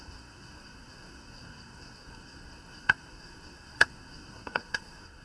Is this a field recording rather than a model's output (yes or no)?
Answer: no